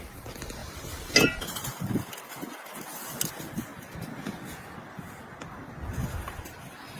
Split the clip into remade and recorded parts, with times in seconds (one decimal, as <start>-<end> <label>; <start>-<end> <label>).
0.0-0.6 recorded; 0.6-2.1 remade; 2.1-7.0 recorded